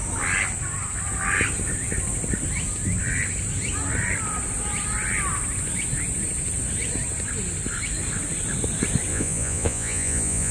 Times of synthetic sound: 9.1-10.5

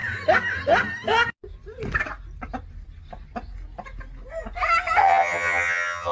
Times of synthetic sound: 5.0-6.1